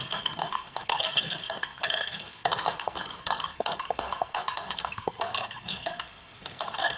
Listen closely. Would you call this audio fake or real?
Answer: fake